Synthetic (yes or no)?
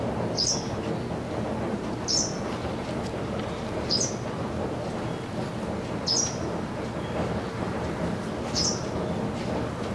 no